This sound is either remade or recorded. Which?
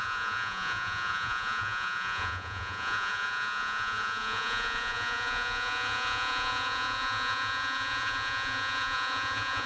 remade